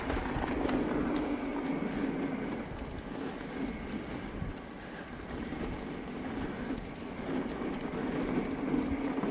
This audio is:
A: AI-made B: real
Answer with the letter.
B